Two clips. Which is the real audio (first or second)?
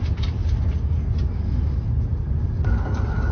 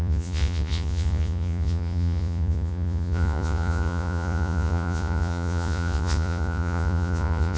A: first